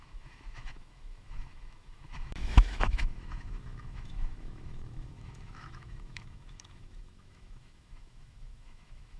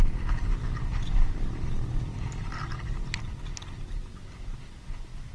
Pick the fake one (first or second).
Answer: first